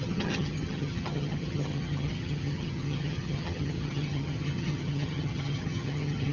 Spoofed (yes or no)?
yes